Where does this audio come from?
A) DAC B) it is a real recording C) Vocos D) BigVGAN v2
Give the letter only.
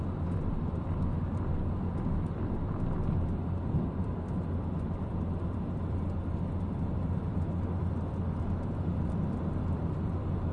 D